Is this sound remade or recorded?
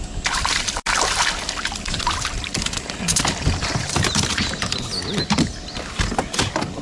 recorded